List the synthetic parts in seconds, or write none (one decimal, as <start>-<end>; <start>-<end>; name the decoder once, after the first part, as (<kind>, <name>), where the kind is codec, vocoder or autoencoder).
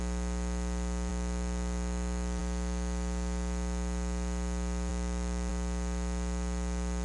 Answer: none